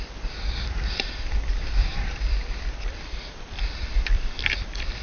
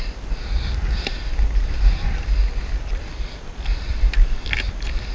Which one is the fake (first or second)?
first